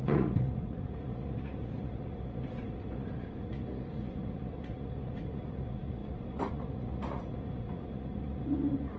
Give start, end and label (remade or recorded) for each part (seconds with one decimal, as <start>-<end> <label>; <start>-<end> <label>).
0.0-9.0 remade